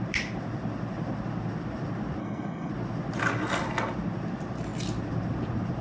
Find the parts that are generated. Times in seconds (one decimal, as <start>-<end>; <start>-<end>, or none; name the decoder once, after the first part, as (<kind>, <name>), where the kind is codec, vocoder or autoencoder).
2.2-2.7 (codec, SNAC)